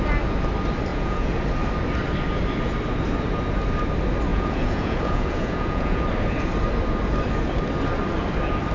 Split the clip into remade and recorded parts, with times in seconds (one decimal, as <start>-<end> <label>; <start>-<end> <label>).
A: 0.0-0.9 recorded; 0.9-1.4 remade; 1.4-4.3 recorded; 4.3-6.0 remade; 6.0-8.7 recorded